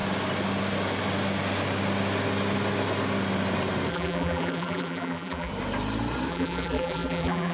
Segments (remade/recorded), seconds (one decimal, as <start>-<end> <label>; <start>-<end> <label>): 0.0-3.9 recorded; 3.9-5.5 remade; 5.5-6.3 recorded; 6.3-7.5 remade